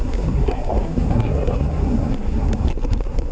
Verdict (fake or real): fake